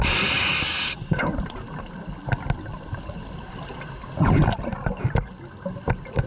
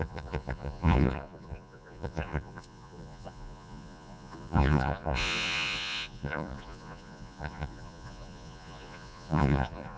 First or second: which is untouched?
first